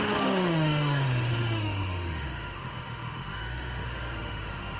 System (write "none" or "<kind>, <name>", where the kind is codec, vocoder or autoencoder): autoencoder, DAC-VAE